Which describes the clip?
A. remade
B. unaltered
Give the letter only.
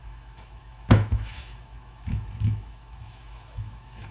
A